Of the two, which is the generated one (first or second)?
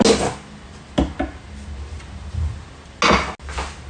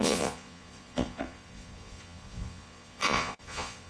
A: second